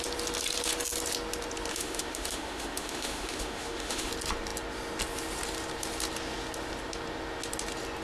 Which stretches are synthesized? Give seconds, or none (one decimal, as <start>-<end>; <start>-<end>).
1.7-4.1